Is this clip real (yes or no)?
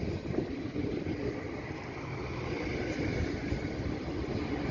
yes